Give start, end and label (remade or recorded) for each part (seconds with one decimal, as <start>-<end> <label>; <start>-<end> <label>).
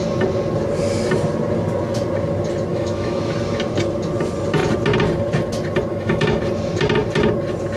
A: 0.0-2.7 recorded; 2.7-3.2 remade; 3.2-5.9 recorded; 5.9-6.4 remade; 6.4-7.8 recorded